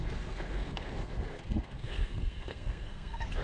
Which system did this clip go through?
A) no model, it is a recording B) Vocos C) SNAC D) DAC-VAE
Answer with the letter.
C